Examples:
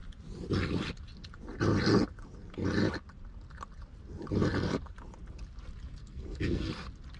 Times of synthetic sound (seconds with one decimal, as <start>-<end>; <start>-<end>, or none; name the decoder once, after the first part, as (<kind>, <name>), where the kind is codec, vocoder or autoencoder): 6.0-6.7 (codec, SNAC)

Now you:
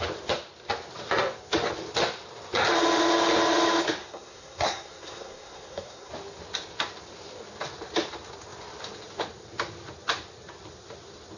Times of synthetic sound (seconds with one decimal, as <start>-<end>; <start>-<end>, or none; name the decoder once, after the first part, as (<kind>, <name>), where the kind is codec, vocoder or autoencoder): 4.0-6.1 (codec, SNAC)

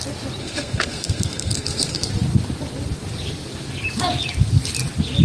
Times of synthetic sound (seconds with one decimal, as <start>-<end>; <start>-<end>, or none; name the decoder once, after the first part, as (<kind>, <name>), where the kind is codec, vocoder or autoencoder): 0.4-2.1 (codec, SNAC)

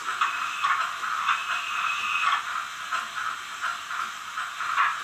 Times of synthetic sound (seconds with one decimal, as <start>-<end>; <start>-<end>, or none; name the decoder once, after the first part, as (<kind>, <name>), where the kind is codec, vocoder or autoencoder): none

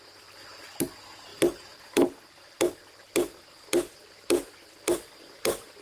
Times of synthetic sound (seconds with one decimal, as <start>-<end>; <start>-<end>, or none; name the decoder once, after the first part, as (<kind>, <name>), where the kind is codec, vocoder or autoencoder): none

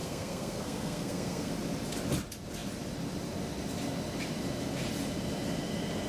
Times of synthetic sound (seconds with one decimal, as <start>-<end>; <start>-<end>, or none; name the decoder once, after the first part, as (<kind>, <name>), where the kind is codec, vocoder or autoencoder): 0.0-1.5 (codec, SNAC)